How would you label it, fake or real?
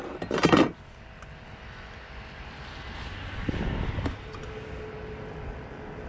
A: real